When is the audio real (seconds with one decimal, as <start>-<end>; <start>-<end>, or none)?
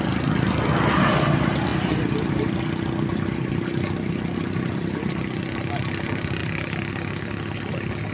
0.0-8.1